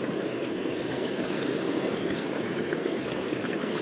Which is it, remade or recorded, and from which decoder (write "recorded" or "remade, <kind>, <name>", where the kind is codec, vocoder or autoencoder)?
remade, codec, SNAC